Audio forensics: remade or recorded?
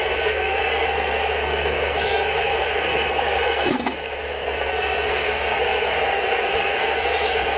remade